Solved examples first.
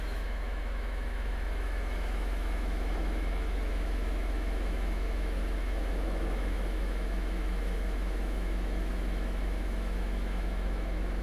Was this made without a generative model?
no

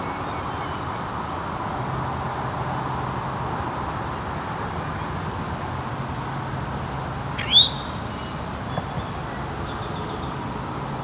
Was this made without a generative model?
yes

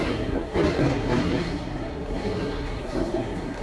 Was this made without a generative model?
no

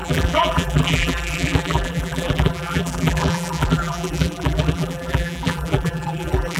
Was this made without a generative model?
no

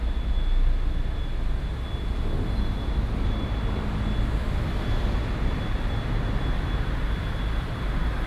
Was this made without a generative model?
yes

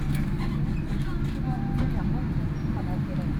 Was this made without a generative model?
yes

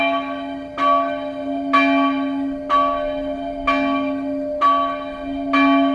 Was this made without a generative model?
yes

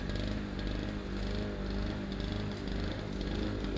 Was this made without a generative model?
yes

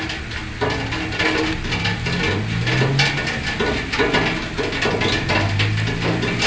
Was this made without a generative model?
yes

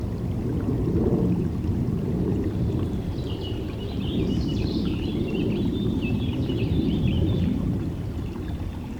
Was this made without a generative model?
no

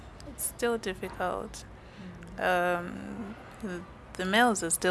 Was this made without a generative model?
yes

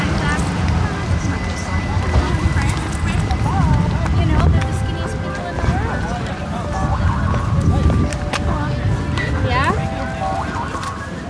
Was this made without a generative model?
yes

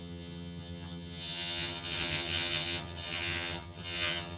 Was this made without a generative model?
no